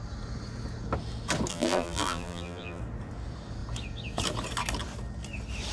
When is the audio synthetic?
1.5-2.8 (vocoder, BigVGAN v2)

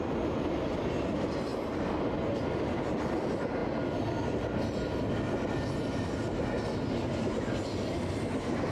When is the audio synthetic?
none

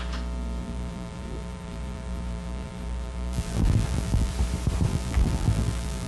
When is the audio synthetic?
0.6-4.3 (vocoder, BigVGAN v2); 4.9-6.1